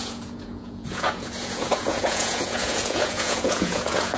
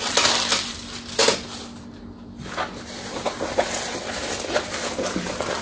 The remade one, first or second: first